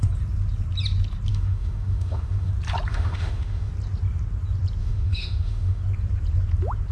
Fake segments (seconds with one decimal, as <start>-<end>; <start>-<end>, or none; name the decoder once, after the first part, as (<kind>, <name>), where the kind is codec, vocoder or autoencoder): 1.3-2.5 (autoencoder, DAC-VAE); 2.9-3.7; 4.8-5.8